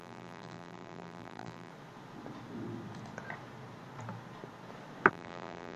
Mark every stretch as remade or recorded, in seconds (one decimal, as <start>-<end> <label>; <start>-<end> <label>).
0.0-1.7 remade; 1.7-5.1 recorded; 5.1-5.8 remade